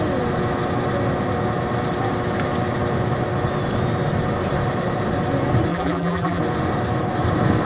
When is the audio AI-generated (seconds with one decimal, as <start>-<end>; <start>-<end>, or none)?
5.7-6.4